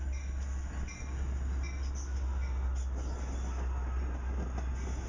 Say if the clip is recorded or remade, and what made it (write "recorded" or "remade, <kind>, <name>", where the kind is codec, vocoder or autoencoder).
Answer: recorded